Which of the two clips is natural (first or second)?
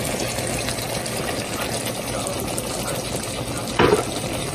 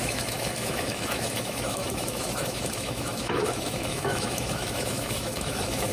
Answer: first